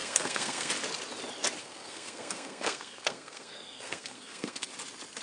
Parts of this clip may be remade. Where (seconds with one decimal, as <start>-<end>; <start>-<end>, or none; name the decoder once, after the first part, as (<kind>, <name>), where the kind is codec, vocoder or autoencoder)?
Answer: 0.0-0.7 (codec, SNAC); 1.6-4.7